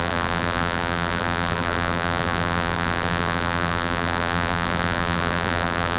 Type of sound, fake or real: fake